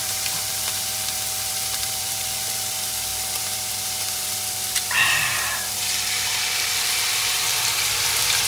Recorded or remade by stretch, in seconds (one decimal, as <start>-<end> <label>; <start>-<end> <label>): 0.0-8.5 remade